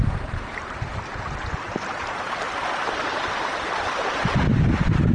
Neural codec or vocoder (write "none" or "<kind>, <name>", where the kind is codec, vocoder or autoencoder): none